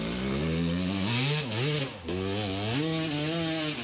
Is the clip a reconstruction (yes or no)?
no